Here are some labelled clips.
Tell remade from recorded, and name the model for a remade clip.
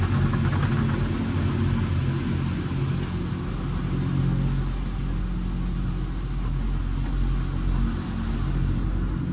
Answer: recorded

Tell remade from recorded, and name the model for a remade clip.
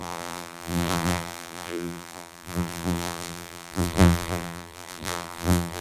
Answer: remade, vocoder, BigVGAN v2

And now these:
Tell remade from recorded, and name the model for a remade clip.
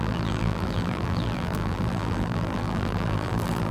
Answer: remade, vocoder, BigVGAN v2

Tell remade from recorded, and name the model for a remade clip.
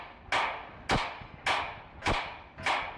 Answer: recorded